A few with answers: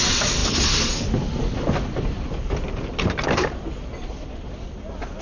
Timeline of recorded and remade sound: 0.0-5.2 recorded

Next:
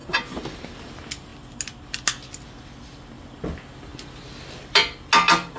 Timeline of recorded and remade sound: 0.0-0.9 remade; 0.9-5.6 recorded

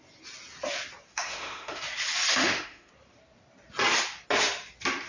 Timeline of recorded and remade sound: 0.0-1.1 recorded; 1.1-1.8 remade; 1.8-2.3 recorded; 2.3-2.9 remade; 2.9-5.1 recorded

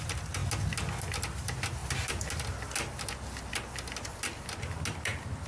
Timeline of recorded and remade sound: 0.0-5.5 recorded

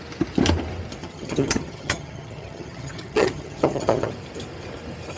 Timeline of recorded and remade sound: 0.0-1.0 recorded; 1.0-4.1 remade; 4.1-5.2 recorded

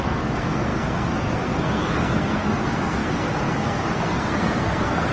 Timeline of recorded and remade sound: 0.0-5.1 remade

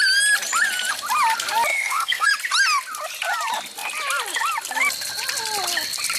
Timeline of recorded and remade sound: 0.0-1.7 recorded; 1.7-2.3 remade; 2.3-6.2 recorded